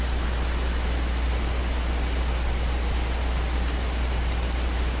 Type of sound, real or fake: real